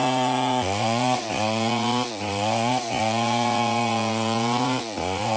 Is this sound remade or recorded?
remade